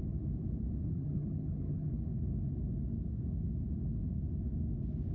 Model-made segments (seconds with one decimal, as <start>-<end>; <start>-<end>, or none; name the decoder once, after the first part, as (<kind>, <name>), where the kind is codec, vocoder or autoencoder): 0.9-1.9 (vocoder, HiFi-GAN)